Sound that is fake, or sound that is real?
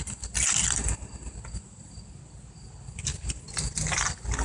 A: real